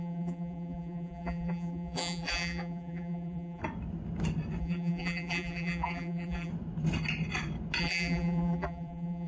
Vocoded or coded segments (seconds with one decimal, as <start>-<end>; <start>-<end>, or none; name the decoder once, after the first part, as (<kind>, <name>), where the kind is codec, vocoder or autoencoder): 0.0-3.6 (vocoder, BigVGAN v2); 4.6-6.5; 7.8-9.3